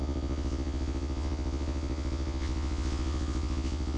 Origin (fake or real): fake